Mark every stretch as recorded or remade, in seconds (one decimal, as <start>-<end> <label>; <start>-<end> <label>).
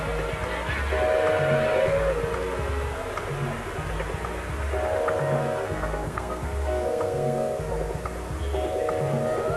0.0-5.4 recorded; 5.4-7.6 remade; 7.6-9.6 recorded